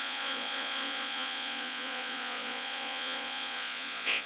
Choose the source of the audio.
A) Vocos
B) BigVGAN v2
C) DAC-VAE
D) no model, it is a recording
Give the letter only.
A